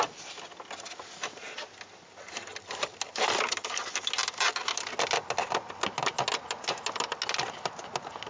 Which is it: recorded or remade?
recorded